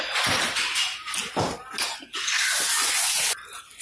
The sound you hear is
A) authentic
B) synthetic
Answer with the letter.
A